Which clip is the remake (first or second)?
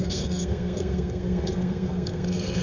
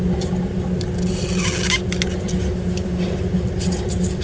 first